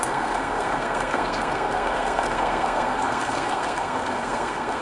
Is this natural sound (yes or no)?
no